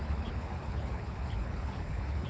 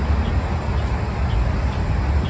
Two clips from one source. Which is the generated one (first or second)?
first